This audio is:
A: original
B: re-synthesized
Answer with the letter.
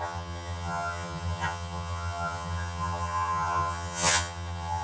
B